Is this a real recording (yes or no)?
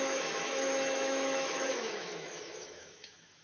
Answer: no